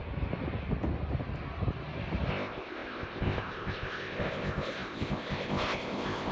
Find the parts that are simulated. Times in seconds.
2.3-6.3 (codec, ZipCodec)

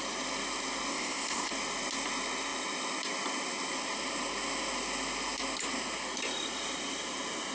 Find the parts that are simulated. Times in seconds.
0.9-1.5 (codec, ZipCodec)

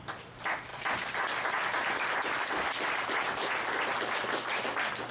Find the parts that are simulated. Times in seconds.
none